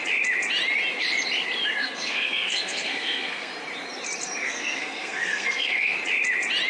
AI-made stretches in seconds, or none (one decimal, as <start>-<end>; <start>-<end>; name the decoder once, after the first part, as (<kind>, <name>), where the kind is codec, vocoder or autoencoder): 1.8-3.5 (codec, SNAC); 4.4-6.0